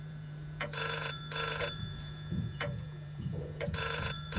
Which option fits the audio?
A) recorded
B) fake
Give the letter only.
B